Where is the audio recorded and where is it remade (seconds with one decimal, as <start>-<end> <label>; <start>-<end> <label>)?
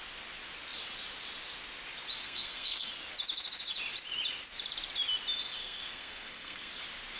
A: 0.0-2.2 recorded; 2.2-2.9 remade; 2.9-5.6 recorded; 5.6-6.7 remade; 6.7-7.2 recorded